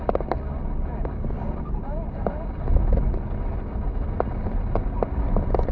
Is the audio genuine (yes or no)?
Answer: yes